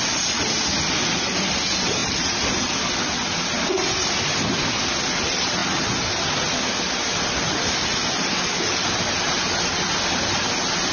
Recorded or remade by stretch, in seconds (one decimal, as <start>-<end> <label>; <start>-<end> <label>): 0.0-10.9 recorded

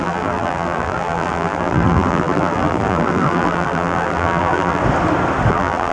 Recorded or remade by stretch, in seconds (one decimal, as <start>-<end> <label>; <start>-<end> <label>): 0.0-4.8 remade; 4.8-5.5 recorded; 5.5-5.9 remade

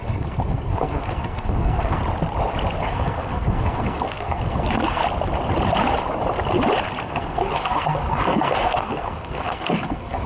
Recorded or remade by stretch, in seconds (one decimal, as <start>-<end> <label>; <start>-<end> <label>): 0.0-2.0 remade; 2.0-2.8 recorded; 2.8-5.0 remade; 5.0-7.0 recorded; 7.0-10.3 remade

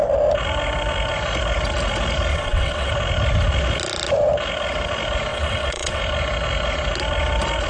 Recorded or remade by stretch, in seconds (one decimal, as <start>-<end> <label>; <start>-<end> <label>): 0.0-2.3 recorded; 2.3-2.9 remade; 2.9-5.3 recorded; 5.3-6.0 remade; 6.0-7.7 recorded